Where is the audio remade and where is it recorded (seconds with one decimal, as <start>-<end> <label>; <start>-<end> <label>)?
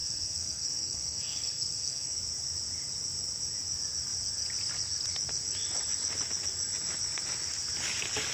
0.0-2.2 remade; 2.2-8.3 recorded